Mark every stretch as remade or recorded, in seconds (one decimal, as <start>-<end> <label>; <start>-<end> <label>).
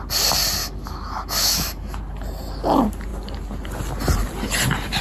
0.0-0.6 recorded; 0.6-2.0 remade; 2.0-5.0 recorded